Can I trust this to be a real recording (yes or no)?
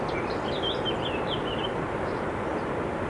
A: yes